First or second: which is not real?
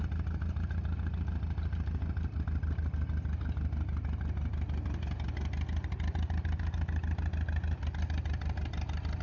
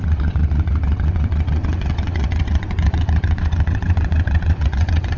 second